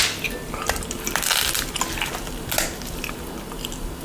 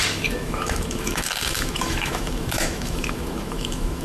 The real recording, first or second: first